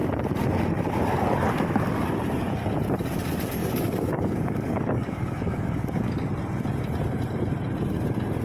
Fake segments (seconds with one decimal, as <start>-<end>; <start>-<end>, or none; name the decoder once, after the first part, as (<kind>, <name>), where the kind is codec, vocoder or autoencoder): 3.6-6.3 (codec, DAC)